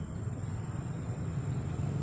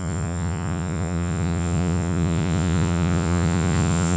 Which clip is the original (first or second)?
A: first